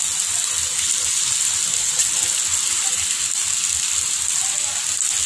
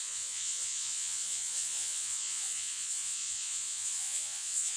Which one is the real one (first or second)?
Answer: first